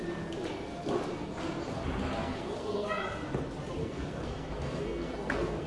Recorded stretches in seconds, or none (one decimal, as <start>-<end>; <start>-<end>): 0.0-2.2; 3.0-3.8